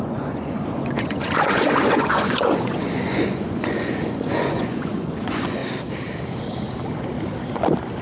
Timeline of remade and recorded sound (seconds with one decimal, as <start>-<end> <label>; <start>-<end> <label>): 0.0-5.6 remade; 5.6-8.0 recorded